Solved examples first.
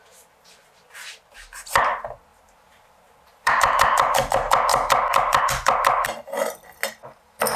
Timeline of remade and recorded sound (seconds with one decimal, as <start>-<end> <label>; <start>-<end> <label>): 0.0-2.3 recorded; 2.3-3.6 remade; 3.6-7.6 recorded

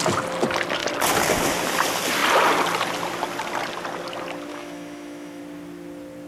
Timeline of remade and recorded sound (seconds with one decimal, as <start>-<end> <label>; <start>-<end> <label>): 0.0-4.5 recorded; 4.5-5.4 remade; 5.4-6.3 recorded

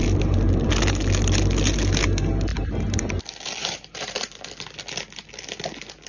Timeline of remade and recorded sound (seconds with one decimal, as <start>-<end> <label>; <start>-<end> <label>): 0.0-0.7 remade; 0.7-2.5 recorded; 2.5-3.2 remade; 3.2-3.6 recorded; 3.6-4.4 remade; 4.4-6.1 recorded

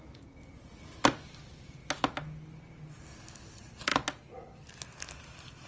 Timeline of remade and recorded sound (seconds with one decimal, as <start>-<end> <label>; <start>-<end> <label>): 0.0-5.7 recorded

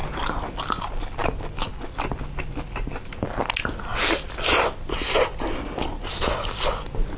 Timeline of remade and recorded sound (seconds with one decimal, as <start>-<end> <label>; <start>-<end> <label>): 0.0-7.2 recorded